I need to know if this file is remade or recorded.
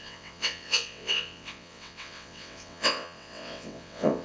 remade